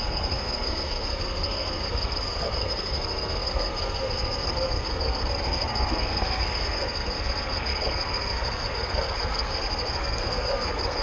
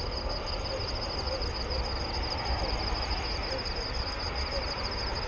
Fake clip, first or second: first